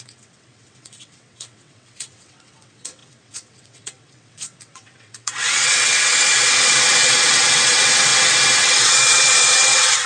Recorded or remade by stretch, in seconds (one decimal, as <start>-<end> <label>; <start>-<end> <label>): 0.0-8.1 remade; 8.1-8.6 recorded; 8.6-10.1 remade